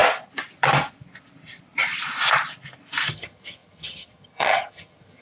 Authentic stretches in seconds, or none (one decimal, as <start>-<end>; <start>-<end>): 0.0-3.1